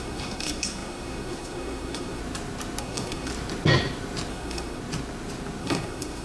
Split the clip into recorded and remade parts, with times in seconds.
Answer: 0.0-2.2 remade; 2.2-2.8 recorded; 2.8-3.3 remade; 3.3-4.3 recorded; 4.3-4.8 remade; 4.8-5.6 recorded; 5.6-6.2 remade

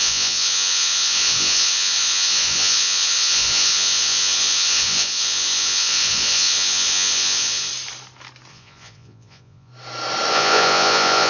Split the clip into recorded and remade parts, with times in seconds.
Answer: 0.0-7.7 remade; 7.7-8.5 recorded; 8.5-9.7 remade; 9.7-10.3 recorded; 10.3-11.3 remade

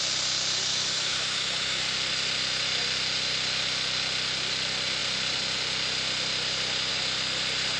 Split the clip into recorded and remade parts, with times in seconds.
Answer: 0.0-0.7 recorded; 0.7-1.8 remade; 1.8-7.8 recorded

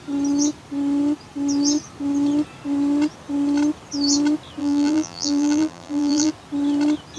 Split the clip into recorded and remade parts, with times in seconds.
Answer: 0.0-4.6 recorded; 4.6-6.3 remade; 6.3-7.2 recorded

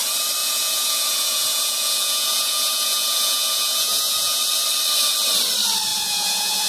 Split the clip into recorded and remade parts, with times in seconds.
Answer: 0.0-0.4 recorded; 0.4-4.4 remade; 4.4-5.9 recorded; 5.9-6.7 remade